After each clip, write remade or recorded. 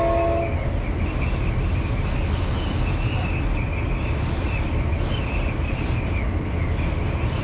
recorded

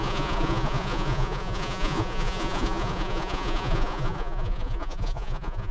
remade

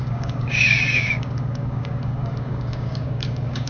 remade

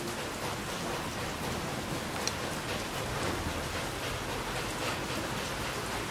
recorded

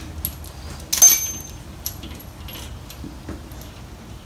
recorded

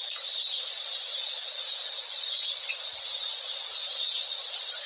recorded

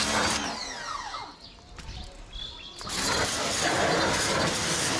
recorded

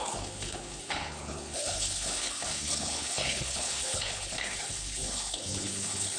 remade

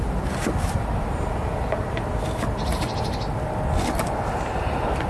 remade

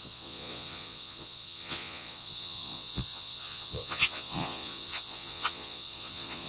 remade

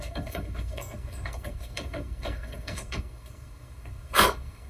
remade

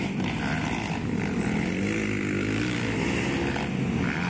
recorded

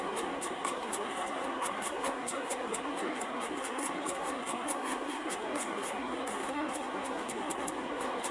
remade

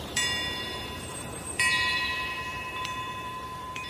remade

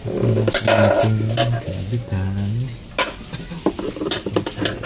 recorded